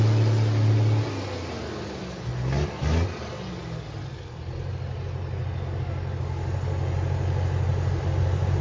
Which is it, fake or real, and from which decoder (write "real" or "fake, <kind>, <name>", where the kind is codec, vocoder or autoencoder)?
real